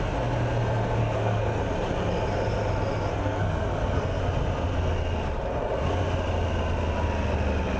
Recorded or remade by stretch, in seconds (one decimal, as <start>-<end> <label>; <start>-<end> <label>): 0.0-1.0 recorded; 1.0-1.6 remade; 1.6-3.1 recorded; 3.1-4.2 remade; 4.2-7.8 recorded

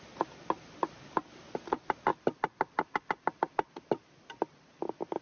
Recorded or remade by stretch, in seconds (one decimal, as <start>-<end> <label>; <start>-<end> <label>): 0.0-5.2 recorded

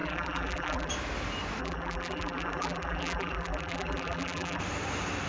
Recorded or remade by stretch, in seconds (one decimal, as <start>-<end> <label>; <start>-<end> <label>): 0.0-0.9 remade; 0.9-1.6 recorded; 1.6-4.6 remade; 4.6-5.3 recorded

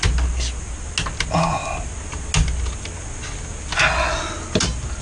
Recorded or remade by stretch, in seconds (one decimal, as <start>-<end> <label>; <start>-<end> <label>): 0.0-5.0 recorded

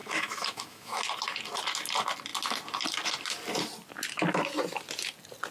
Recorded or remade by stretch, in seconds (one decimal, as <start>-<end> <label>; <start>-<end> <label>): 0.0-1.0 remade; 1.0-5.5 recorded